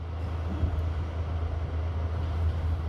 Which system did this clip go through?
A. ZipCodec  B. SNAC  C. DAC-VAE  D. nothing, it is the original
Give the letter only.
D